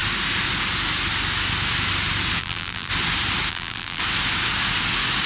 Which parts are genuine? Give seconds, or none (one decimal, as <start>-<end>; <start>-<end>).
0.0-2.4; 2.9-3.5; 4.0-5.3